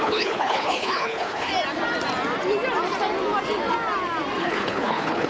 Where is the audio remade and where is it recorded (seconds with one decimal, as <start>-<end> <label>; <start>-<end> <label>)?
0.0-1.5 remade; 1.5-4.4 recorded; 4.4-5.3 remade